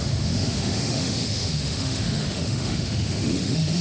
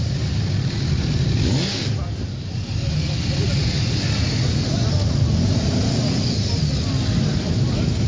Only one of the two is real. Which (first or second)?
second